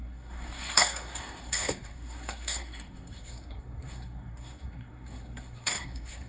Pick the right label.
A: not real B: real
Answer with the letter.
A